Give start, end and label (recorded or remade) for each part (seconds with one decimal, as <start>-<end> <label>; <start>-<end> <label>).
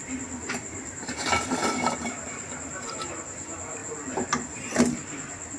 0.0-2.2 remade; 2.2-5.6 recorded